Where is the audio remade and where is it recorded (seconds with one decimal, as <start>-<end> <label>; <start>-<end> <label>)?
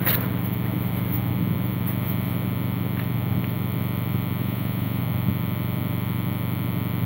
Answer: 0.0-4.4 recorded; 4.4-5.0 remade; 5.0-7.1 recorded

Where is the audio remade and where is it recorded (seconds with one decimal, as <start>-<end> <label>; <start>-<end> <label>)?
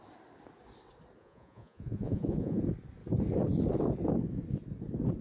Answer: 0.0-1.2 recorded; 1.2-2.6 remade; 2.6-5.2 recorded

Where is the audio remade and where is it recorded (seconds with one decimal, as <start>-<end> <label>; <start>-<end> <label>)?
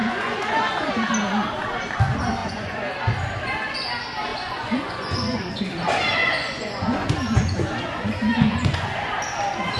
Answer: 0.0-0.9 remade; 0.9-2.4 recorded; 2.4-2.9 remade; 2.9-4.3 recorded; 4.3-5.6 remade; 5.6-6.2 recorded; 6.2-9.1 remade; 9.1-9.8 recorded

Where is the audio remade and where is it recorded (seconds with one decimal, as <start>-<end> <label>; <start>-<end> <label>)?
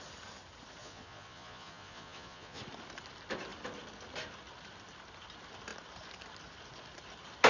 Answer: 0.0-0.8 recorded; 0.8-2.6 remade; 2.6-7.5 recorded